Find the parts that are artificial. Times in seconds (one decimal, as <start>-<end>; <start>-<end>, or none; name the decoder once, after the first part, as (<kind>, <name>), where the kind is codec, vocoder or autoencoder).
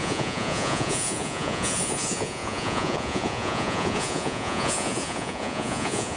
0.0-6.2 (vocoder, Vocos)